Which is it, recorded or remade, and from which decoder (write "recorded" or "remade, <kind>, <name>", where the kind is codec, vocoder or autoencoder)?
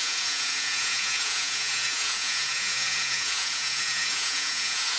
remade, vocoder, Vocos